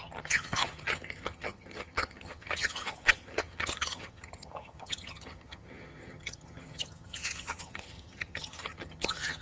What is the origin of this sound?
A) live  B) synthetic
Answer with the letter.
B